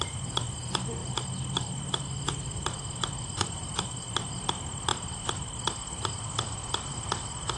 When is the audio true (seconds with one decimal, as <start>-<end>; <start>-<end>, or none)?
0.0-7.6